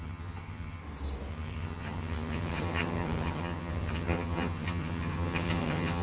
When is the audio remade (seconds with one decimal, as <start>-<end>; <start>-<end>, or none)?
0.0-0.8; 1.3-6.0